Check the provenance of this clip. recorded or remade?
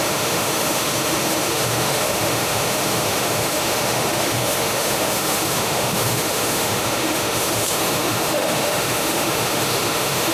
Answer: remade